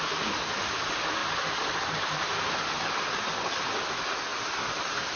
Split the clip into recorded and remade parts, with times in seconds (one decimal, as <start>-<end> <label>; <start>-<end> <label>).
0.0-1.2 recorded; 1.2-2.5 remade; 2.5-4.3 recorded; 4.3-5.2 remade